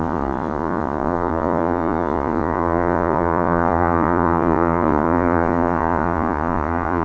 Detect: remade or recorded remade